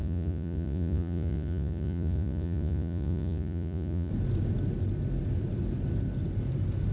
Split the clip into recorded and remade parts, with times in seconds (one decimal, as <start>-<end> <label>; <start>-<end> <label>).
0.0-4.1 remade; 4.1-6.9 recorded